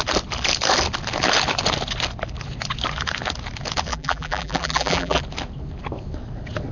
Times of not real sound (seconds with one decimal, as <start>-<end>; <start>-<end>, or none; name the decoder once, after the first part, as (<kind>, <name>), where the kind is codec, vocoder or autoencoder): 3.9-5.2 (vocoder, BigVGAN v2)